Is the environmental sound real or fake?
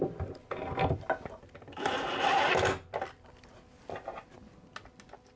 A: real